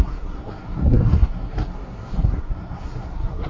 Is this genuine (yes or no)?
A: no